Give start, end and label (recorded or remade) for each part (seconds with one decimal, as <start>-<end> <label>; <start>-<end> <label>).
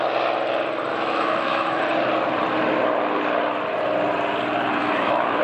0.0-0.9 recorded; 0.9-1.8 remade; 1.8-4.8 recorded; 4.8-5.4 remade